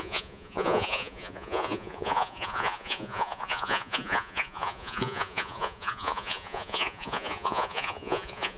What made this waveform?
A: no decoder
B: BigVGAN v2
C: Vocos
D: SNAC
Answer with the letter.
C